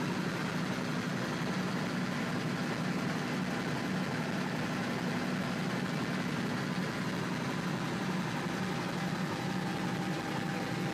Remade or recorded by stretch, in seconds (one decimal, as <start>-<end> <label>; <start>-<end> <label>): 0.0-10.9 recorded